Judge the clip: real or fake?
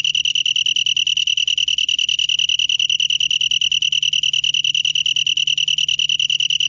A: real